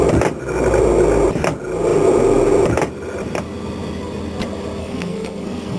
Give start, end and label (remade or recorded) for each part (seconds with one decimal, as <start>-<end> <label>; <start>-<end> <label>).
0.0-4.8 recorded; 4.8-5.8 remade